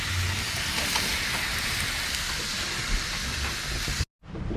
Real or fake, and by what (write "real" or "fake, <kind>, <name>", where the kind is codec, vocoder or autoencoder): real